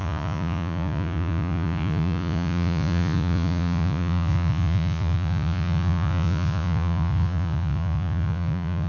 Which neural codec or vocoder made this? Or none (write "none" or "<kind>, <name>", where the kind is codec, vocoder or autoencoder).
vocoder, Vocos